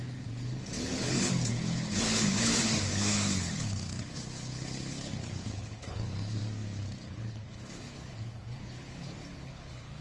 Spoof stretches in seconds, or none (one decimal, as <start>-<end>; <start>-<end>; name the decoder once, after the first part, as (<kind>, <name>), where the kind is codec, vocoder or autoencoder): 0.0-6.4 (codec, HILCodec); 7.1-10.0